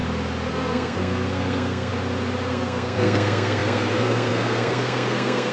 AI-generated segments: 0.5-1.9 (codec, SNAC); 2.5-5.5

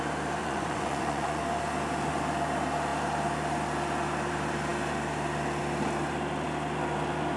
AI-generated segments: 0.4-1.4 (vocoder, Vocos)

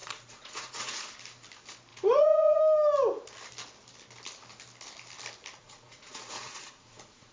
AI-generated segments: 0.0-1.1 (vocoder, Vocos); 1.9-2.6; 5.6-7.3

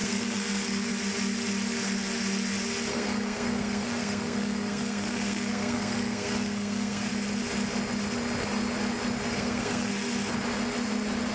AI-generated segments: 0.0-0.9 (codec, SNAC); 2.9-7.1; 9.3-9.9

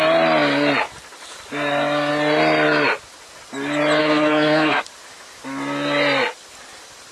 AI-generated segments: 4.0-4.8 (codec, SNAC)

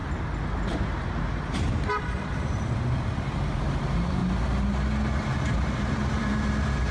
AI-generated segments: 0.0-4.2 (vocoder, BigVGAN v2); 5.2-6.9